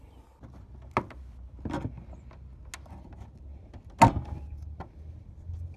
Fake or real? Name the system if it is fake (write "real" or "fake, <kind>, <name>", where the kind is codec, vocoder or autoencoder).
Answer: real